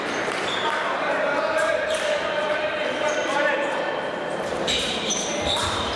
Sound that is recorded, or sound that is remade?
remade